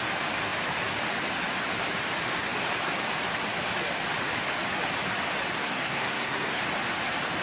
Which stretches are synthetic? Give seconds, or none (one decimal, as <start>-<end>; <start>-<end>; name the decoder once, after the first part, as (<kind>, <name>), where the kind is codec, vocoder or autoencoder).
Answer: 5.6-6.6 (codec, SNAC)